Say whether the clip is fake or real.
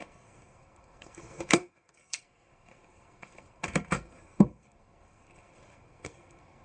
fake